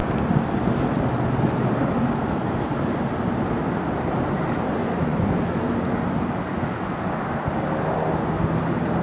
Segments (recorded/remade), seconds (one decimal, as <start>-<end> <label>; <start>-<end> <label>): 0.0-4.8 recorded; 4.8-5.4 remade; 5.4-9.0 recorded